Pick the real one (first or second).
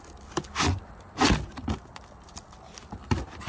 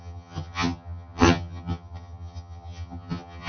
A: first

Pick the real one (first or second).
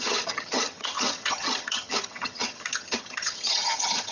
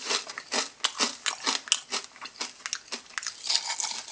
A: second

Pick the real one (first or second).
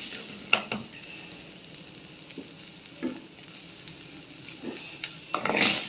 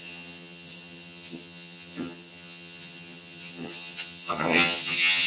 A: first